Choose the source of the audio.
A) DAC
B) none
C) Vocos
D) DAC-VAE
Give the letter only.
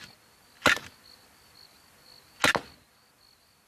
B